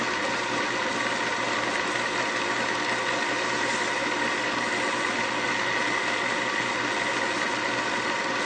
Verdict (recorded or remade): recorded